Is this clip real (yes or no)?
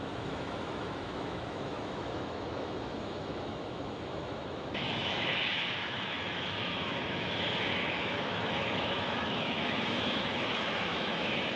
no